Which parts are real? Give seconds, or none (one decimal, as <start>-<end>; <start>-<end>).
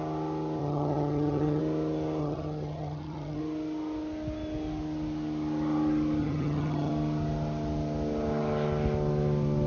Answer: 0.0-0.6; 1.6-2.2; 3.4-6.2; 6.9-9.7